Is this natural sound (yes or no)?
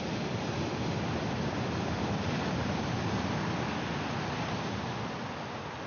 yes